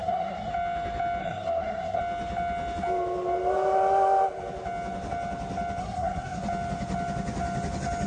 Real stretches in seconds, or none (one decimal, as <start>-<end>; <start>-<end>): 0.5-1.2; 2.0-5.8; 6.4-8.1